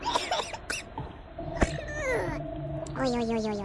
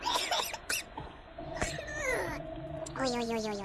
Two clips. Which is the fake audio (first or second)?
second